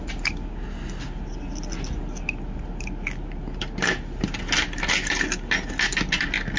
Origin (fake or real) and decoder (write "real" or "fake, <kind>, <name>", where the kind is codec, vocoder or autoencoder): real